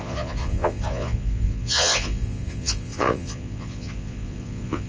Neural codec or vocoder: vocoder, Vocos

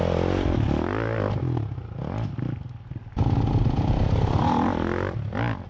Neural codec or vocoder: none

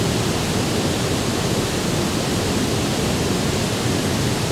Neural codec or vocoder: none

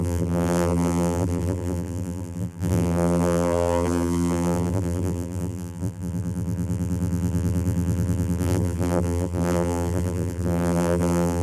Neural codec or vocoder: vocoder, BigVGAN v2